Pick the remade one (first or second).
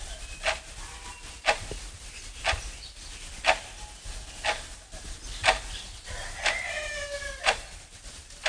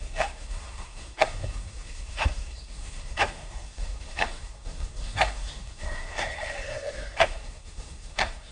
second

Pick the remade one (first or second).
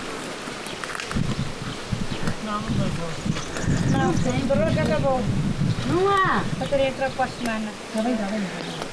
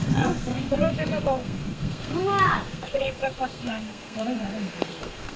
second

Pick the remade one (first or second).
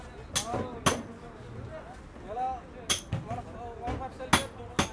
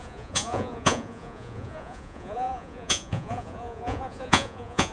second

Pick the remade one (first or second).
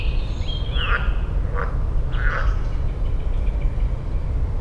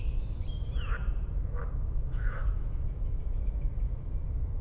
second